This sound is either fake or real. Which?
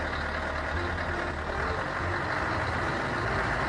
real